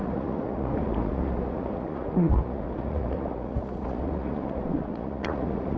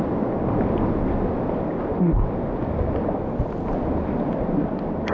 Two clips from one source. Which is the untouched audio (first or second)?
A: second